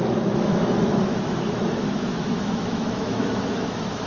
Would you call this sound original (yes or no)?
no